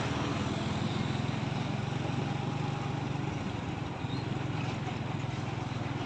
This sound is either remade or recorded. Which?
recorded